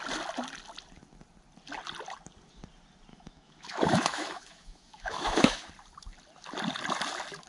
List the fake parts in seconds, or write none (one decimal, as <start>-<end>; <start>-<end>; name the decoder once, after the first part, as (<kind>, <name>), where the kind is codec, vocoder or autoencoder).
3.1-5.7 (autoencoder, DAC-VAE)